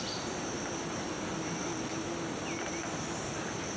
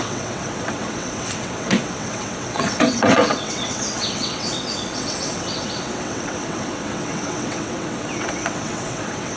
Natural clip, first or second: first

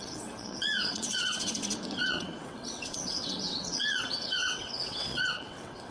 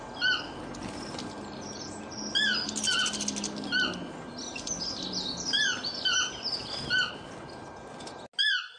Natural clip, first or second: second